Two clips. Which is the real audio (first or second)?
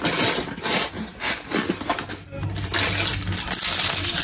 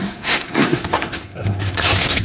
first